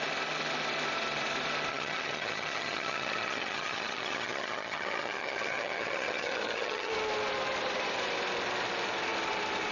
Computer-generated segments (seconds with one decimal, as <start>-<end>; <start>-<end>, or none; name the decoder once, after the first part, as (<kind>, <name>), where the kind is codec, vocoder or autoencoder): 1.7-6.9 (vocoder, HiFi-GAN)